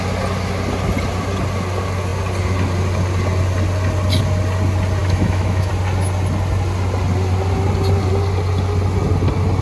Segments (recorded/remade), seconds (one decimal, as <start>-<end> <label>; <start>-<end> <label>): 0.0-5.0 recorded; 5.0-5.7 remade; 5.7-9.6 recorded